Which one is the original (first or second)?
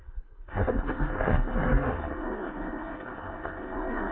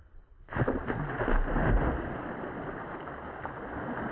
second